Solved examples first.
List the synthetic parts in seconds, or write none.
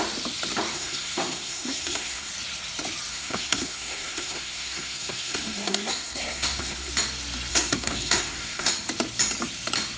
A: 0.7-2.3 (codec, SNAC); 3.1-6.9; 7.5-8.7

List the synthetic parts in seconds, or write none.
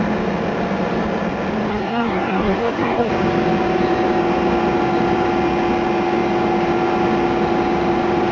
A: 1.7-3.1 (codec, SNAC)